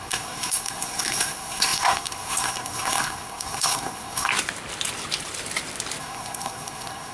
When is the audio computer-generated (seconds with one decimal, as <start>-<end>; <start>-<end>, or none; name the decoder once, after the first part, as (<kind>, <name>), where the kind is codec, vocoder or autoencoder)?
0.0-4.3 (codec, SNAC); 6.0-7.1